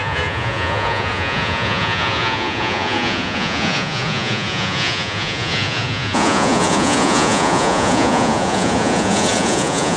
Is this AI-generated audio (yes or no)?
yes